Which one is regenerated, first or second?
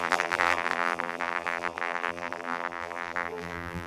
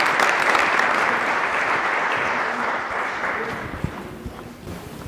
first